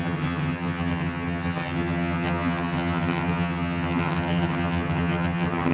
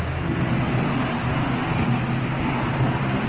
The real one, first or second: second